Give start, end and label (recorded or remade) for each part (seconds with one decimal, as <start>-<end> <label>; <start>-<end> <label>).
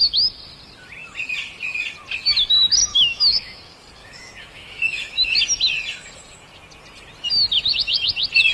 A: 0.0-2.9 recorded; 2.9-3.6 remade; 3.6-4.0 recorded; 4.0-5.3 remade; 5.3-8.5 recorded